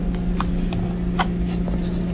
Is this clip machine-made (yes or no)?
no